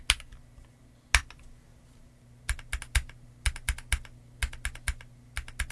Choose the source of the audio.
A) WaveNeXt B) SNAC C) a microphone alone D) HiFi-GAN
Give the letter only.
C